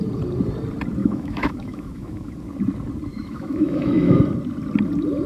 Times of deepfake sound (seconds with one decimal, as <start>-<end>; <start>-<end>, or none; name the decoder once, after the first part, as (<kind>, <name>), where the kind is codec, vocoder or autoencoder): 1.0-2.3 (autoencoder, DAC-VAE); 3.1-4.2